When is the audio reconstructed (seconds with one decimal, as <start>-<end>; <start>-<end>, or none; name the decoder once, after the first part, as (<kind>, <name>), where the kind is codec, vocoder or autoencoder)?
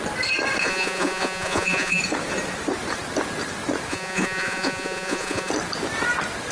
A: 0.6-2.0 (vocoder, Vocos); 3.9-5.5